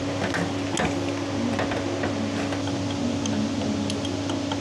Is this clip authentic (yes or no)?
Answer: yes